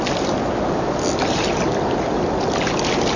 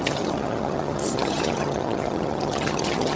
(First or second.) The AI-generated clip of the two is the second